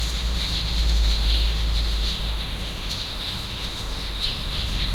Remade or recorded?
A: remade